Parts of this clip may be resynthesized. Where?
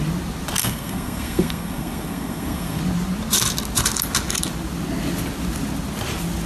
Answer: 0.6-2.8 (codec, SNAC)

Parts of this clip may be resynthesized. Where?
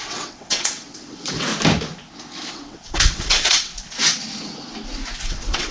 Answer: 0.0-1.5 (vocoder, WaveNeXt); 2.5-3.7; 5.2-5.7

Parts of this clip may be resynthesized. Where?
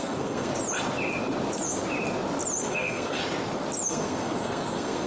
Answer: 0.0-0.5 (codec, SNAC); 2.7-3.2; 3.9-5.1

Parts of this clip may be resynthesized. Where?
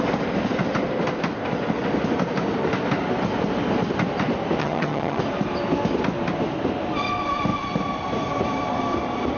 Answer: 4.6-5.2 (vocoder, HiFi-GAN)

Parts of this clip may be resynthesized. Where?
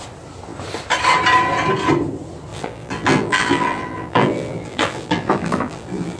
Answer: 2.5-6.2 (vocoder, BigVGAN v2)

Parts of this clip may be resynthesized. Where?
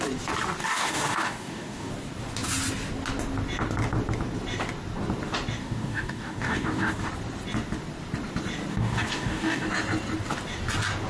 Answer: 0.6-1.9 (codec, DAC); 5.6-7.1; 8.7-9.7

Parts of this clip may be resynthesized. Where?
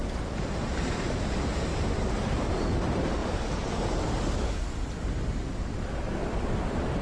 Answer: 0.0-1.7 (vocoder, BigVGAN v2); 6.2-7.0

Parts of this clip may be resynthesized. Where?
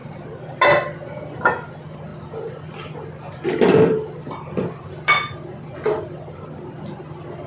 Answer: none